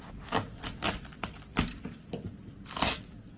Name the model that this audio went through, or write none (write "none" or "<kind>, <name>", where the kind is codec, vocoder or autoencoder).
none